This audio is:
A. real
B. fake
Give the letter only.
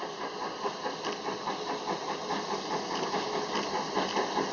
A